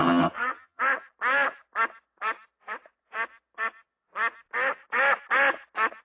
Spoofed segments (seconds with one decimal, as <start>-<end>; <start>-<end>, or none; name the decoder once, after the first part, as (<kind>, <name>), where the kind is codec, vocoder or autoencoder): 0.0-0.8 (vocoder, HiFi-GAN)